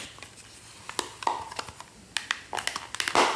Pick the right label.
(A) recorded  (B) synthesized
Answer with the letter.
A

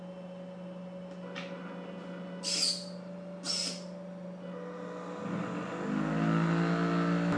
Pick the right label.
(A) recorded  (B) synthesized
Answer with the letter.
A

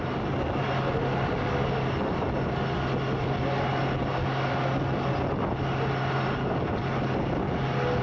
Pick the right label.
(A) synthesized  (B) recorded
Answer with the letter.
B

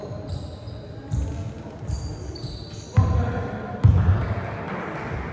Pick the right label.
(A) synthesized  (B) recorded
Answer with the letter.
B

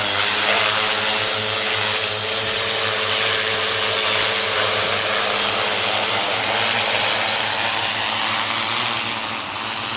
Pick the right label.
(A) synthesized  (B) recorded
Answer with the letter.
B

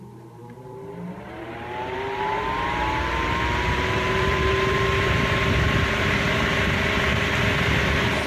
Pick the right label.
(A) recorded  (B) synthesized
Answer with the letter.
B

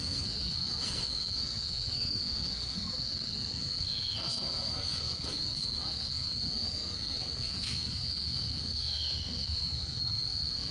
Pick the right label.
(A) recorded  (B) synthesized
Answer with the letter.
B